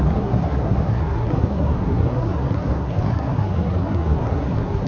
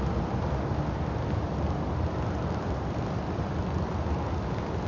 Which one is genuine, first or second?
second